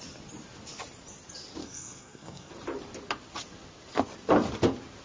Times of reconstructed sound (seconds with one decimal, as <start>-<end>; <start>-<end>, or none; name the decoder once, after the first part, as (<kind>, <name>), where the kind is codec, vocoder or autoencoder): 1.6-2.5 (codec, SNAC)